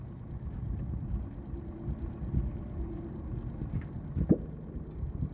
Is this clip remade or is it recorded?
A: recorded